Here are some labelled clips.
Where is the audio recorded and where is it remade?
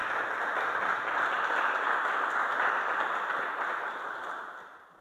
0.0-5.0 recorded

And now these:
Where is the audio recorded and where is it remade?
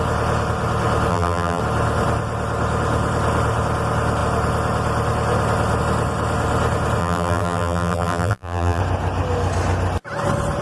0.0-1.1 recorded; 1.1-1.6 remade; 1.6-7.0 recorded; 7.0-8.8 remade; 8.8-10.6 recorded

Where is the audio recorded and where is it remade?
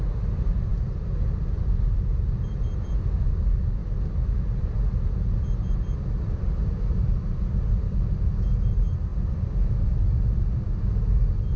0.0-11.6 recorded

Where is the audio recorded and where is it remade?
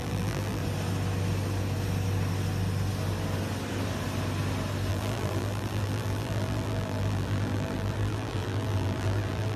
0.0-0.6 remade; 0.6-4.9 recorded; 4.9-9.6 remade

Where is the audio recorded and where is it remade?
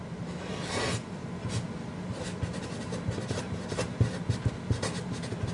0.0-5.5 recorded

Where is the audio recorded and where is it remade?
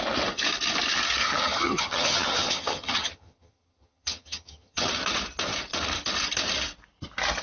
0.0-1.2 recorded; 1.2-4.9 remade; 4.9-7.4 recorded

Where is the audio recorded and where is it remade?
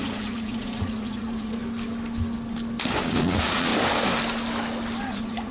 0.0-1.6 remade; 1.6-3.0 recorded; 3.0-3.7 remade; 3.7-5.0 recorded; 5.0-5.5 remade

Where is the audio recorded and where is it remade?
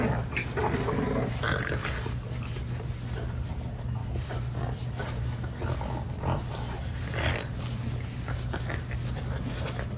0.0-10.0 recorded